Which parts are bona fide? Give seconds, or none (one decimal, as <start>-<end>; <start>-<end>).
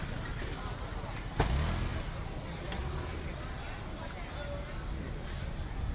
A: 0.0-5.9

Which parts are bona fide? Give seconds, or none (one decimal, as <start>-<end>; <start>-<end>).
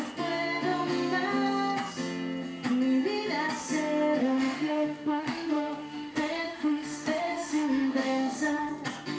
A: 0.0-4.2; 8.7-9.2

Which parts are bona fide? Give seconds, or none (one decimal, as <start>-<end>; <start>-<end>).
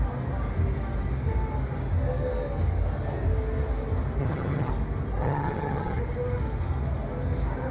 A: 0.0-4.2; 4.7-5.2; 6.0-7.7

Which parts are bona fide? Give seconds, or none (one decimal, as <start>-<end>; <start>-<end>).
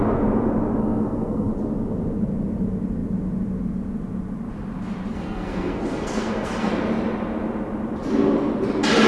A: 0.0-0.8; 1.5-5.1; 6.7-9.1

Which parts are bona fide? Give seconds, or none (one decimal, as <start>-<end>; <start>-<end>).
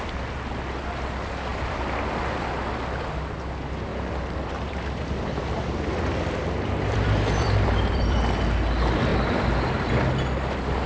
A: 0.0-1.5; 2.6-3.9; 8.4-10.9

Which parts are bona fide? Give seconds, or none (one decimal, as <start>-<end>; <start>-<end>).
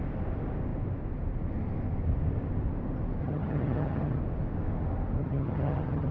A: 0.0-3.2; 4.2-5.2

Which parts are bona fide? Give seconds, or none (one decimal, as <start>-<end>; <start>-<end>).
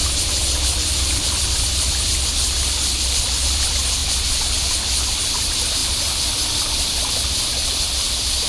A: 5.8-7.1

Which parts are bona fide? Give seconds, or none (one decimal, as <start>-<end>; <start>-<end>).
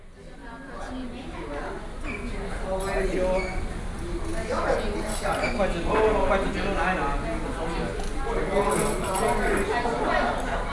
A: 0.0-10.7